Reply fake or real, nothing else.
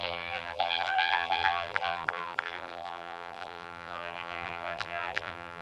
fake